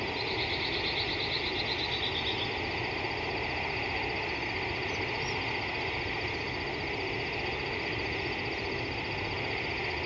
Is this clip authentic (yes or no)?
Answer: yes